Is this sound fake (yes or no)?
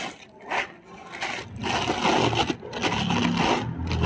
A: no